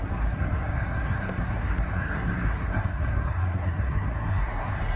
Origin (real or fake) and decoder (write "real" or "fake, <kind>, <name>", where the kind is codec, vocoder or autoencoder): fake, codec, SNAC